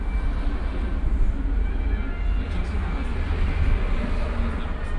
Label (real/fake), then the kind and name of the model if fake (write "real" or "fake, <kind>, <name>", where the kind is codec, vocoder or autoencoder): real